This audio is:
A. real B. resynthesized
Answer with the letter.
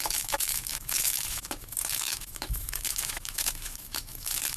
B